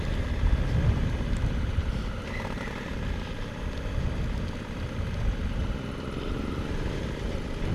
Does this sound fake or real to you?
real